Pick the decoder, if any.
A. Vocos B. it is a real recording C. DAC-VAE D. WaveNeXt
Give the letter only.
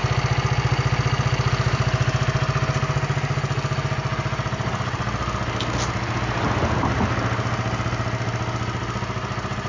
B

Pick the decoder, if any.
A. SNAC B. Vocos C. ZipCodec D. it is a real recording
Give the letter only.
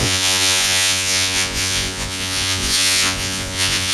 B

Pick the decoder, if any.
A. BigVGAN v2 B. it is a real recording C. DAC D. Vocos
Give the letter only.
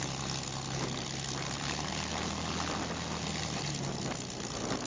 B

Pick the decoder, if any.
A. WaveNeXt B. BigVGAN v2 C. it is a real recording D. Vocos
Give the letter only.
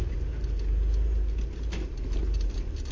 C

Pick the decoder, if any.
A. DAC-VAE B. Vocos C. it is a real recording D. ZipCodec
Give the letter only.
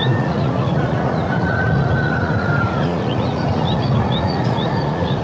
B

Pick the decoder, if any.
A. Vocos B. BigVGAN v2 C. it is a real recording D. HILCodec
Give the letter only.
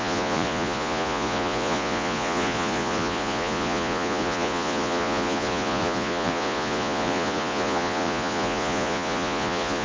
A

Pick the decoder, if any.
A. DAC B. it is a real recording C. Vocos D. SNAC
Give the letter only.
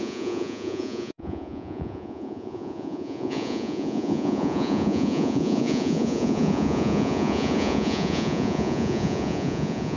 C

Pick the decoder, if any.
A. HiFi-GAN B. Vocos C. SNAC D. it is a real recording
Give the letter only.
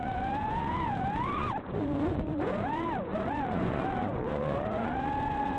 B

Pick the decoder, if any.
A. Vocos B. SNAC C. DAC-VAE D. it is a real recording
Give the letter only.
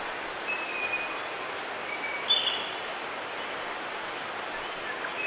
D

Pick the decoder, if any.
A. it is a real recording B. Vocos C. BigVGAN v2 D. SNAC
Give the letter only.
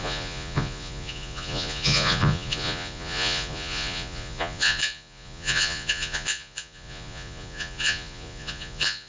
B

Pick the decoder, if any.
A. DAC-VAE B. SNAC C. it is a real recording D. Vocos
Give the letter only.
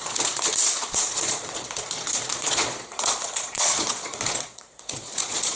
D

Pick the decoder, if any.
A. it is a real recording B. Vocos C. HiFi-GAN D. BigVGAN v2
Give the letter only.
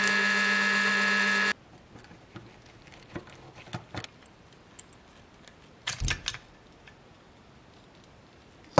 A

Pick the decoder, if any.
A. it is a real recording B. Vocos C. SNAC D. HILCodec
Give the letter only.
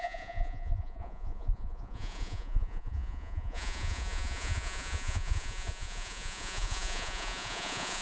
B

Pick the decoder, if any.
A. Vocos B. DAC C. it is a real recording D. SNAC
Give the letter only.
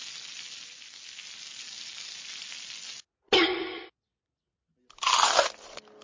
C